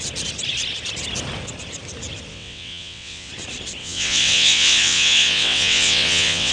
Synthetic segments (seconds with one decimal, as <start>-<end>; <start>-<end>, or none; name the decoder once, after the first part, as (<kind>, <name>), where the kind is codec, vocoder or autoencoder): 2.3-3.3 (vocoder, WaveNeXt); 3.8-6.5